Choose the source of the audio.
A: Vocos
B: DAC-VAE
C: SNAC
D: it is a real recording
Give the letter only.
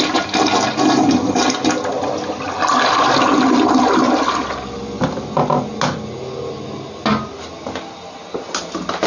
D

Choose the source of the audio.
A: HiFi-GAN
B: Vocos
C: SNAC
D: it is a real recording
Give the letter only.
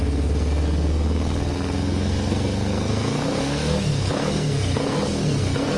C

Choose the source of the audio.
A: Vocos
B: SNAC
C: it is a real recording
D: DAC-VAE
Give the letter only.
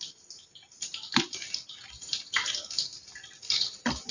C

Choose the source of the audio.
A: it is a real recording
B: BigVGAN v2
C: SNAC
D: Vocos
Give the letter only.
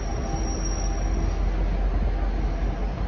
A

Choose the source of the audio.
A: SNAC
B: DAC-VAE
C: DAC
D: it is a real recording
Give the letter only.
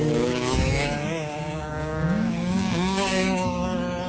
C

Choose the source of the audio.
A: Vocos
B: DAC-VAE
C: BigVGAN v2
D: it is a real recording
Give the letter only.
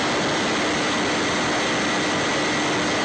D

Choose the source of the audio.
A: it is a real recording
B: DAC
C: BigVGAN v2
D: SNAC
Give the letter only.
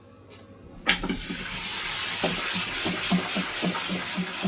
A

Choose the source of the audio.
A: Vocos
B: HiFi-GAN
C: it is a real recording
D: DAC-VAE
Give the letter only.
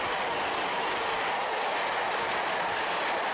C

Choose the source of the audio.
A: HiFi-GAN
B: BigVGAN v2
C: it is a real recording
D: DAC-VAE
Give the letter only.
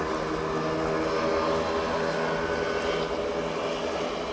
C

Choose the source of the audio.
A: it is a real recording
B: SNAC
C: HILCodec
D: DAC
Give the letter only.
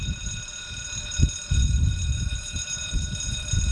A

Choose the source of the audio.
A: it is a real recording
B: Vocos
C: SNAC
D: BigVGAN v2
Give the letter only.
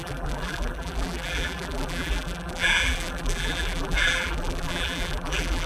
D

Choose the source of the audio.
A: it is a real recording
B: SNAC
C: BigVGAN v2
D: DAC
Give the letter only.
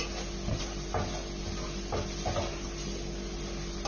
A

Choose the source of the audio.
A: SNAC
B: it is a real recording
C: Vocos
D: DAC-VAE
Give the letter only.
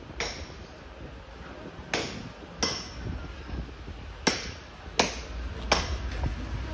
B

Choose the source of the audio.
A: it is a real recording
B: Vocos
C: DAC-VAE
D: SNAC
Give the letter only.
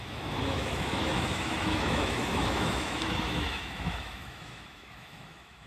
C